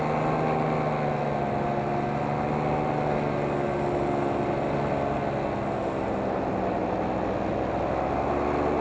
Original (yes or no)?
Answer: yes